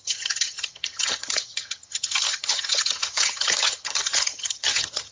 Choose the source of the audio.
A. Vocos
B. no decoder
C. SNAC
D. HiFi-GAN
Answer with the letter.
D